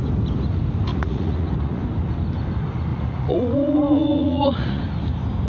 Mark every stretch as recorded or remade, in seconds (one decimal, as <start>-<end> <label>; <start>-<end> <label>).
0.0-0.9 recorded; 0.9-1.8 remade; 1.8-2.9 recorded; 2.9-4.8 remade; 4.8-5.5 recorded

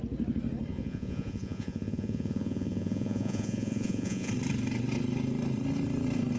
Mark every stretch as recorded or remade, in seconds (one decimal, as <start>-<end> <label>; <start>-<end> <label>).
0.0-0.7 recorded; 0.7-4.3 remade; 4.3-6.4 recorded

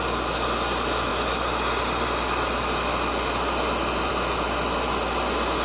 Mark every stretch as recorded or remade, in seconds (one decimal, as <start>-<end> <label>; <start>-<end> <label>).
0.0-5.6 recorded

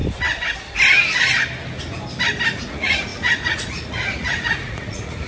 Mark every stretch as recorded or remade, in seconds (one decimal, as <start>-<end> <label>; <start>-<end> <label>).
0.0-2.6 recorded; 2.6-5.3 remade

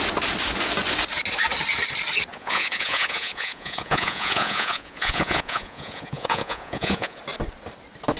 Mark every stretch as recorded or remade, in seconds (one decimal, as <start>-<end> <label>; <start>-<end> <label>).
0.0-2.3 recorded; 2.3-7.2 remade; 7.2-8.2 recorded